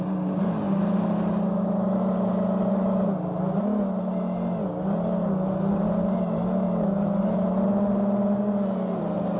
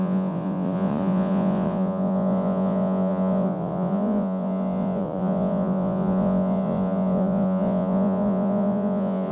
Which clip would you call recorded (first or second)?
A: first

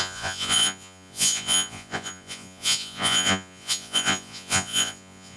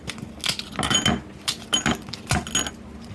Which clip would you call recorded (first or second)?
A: second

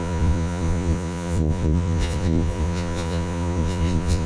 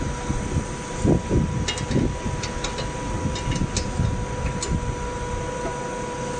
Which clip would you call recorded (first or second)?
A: second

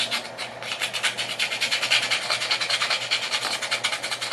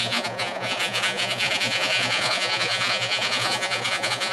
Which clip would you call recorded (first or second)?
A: first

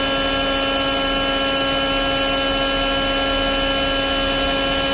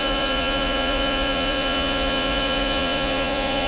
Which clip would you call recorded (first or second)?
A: first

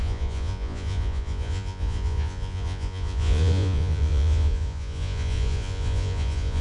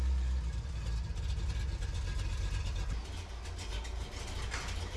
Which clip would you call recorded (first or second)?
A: second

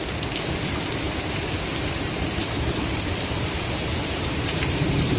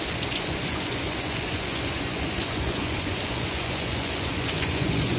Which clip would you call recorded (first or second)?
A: first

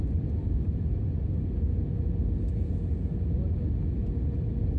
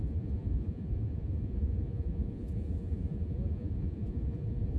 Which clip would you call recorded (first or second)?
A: first